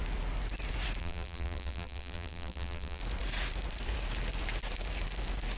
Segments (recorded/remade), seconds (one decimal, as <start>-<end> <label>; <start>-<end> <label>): 0.0-1.0 recorded; 1.0-3.0 remade; 3.0-5.6 recorded